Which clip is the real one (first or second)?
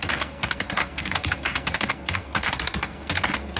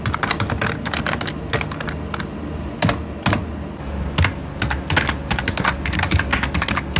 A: second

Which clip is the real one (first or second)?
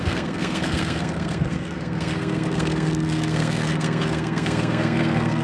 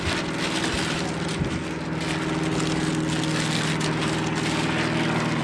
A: second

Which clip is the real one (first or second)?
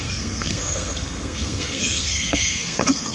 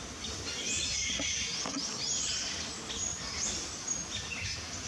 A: second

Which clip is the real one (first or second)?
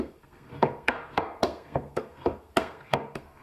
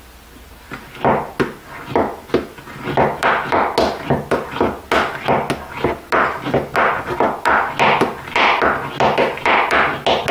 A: second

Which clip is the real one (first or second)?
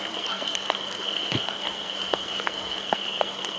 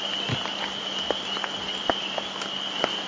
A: second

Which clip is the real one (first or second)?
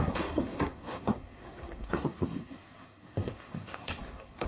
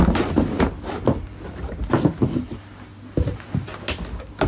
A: second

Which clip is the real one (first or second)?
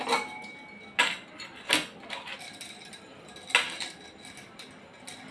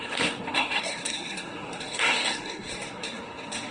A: first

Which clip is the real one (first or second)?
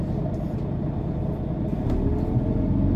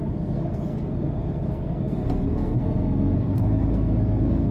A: first